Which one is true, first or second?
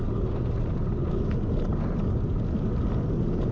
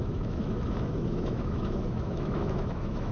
first